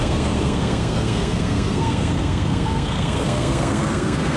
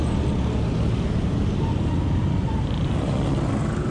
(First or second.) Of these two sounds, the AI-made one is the first